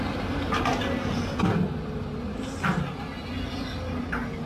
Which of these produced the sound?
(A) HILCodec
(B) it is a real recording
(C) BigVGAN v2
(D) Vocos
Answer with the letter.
B